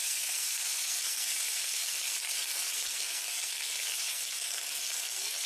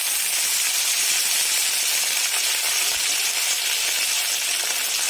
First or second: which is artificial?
first